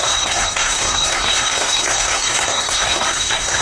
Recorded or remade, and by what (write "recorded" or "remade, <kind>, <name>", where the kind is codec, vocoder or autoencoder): remade, codec, SNAC